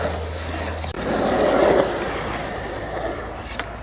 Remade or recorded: recorded